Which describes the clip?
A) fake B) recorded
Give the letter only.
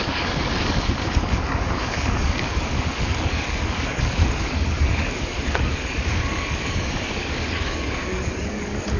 A